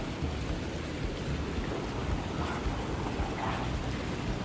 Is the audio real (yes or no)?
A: yes